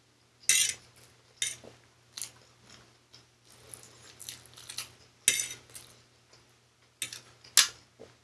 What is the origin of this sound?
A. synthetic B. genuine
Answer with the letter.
B